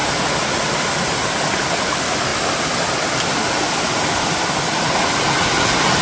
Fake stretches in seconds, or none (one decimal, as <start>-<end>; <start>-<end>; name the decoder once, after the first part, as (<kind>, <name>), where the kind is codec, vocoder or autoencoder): none